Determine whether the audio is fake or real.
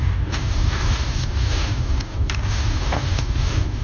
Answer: fake